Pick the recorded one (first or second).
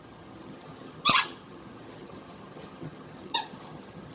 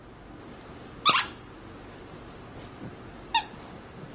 second